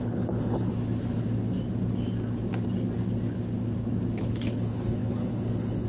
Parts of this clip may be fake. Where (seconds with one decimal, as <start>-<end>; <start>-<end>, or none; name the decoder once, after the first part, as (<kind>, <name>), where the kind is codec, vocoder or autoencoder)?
0.0-0.7 (codec, HILCodec); 4.2-5.9